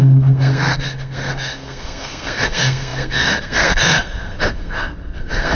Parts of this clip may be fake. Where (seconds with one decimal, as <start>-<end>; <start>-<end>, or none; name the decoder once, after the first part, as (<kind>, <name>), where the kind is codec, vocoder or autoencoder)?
0.0-5.5 (codec, SNAC)